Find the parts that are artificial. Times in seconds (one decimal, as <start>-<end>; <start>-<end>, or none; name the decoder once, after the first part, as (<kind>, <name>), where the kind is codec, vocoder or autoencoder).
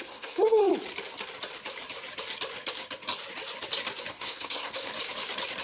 0.0-0.7 (codec, SNAC); 4.1-4.9